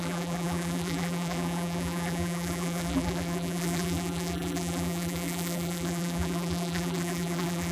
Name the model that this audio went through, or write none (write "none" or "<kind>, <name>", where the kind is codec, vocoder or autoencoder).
vocoder, BigVGAN v2